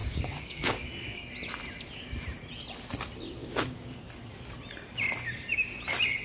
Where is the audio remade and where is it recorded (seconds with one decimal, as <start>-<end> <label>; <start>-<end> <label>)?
0.0-1.2 remade; 1.2-3.4 recorded; 3.4-4.0 remade; 4.0-6.2 recorded